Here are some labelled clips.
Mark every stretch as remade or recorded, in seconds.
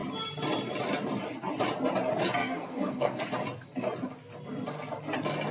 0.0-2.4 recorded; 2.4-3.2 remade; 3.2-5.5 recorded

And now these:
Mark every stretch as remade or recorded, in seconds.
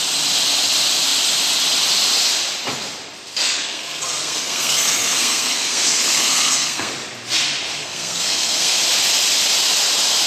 0.0-3.3 recorded; 3.3-6.9 remade; 6.9-7.8 recorded; 7.8-8.8 remade; 8.8-10.3 recorded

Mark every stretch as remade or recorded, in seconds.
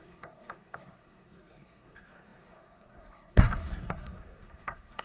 0.0-5.0 remade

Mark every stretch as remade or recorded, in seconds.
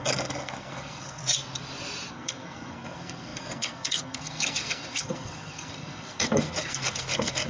0.0-1.2 remade; 1.2-2.1 recorded; 2.1-7.5 remade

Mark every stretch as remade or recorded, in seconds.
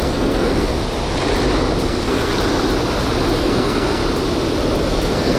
0.0-0.7 remade; 0.7-1.8 recorded; 1.8-2.3 remade; 2.3-3.4 recorded; 3.4-4.0 remade; 4.0-4.9 recorded; 4.9-5.4 remade